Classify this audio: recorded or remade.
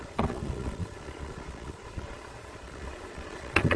remade